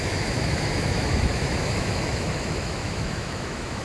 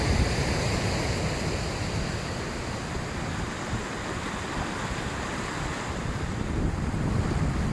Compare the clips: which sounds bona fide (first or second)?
second